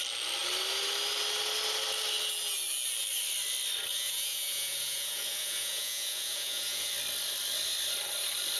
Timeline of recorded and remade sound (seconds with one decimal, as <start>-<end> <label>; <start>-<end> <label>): 0.0-3.9 recorded; 3.9-6.9 remade; 6.9-8.6 recorded